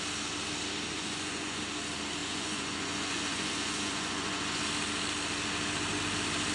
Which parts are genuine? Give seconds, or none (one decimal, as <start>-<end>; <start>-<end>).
0.0-0.9; 1.6-2.2; 4.6-6.5